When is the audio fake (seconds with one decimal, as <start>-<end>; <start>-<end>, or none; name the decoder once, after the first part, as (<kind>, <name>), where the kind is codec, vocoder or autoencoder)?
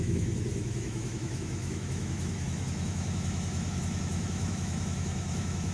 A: 0.0-5.7 (autoencoder, DAC-VAE)